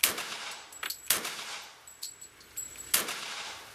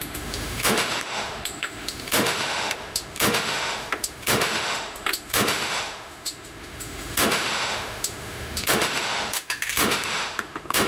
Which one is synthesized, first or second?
second